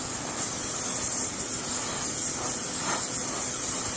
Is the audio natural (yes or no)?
yes